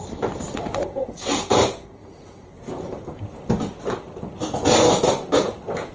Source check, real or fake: real